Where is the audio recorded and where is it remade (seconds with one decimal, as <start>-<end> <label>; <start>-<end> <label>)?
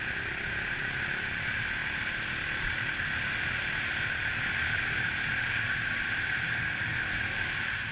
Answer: 0.0-1.8 remade; 1.8-3.1 recorded; 3.1-7.9 remade